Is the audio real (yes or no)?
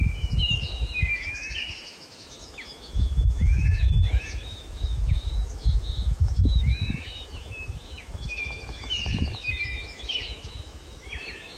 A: no